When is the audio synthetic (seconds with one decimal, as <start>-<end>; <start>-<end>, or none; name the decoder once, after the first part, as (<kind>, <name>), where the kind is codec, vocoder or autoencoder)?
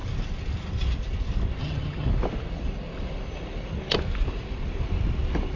1.6-2.1 (vocoder, HiFi-GAN)